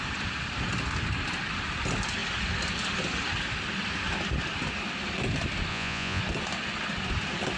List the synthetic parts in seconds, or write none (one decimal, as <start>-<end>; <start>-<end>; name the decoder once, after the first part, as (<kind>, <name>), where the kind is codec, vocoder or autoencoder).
5.7-6.2 (vocoder, Vocos)